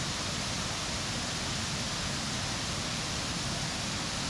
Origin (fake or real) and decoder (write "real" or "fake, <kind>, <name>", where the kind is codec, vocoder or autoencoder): real